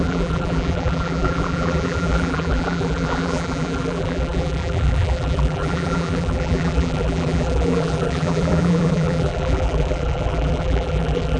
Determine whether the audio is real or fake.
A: fake